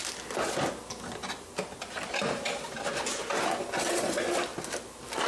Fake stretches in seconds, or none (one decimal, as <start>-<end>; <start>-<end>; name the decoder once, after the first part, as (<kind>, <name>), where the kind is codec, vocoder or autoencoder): 4.5-5.3 (vocoder, BigVGAN v2)